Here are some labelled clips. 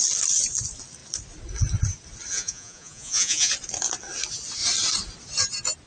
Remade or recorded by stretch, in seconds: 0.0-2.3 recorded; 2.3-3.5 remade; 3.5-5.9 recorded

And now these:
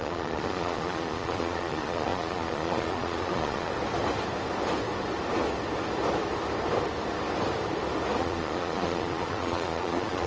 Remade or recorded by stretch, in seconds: 0.0-3.7 remade; 3.7-8.2 recorded; 8.2-10.3 remade

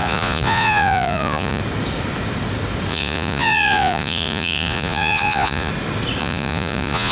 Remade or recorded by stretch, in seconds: 0.0-1.6 remade; 1.6-2.9 recorded; 2.9-5.7 remade; 5.7-6.2 recorded; 6.2-7.1 remade

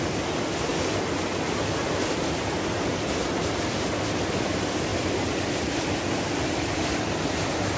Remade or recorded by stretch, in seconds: 0.0-7.8 recorded

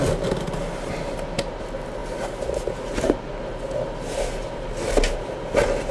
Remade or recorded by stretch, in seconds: 0.0-5.9 recorded

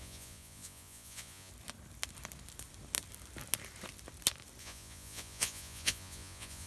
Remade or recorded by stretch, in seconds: 0.0-1.5 remade; 1.5-4.6 recorded; 4.6-6.7 remade

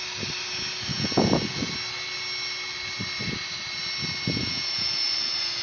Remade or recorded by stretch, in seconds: 0.0-0.9 recorded; 0.9-1.7 remade; 1.7-4.4 recorded; 4.4-5.6 remade

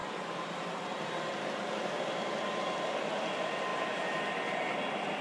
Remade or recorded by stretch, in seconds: 0.0-5.2 recorded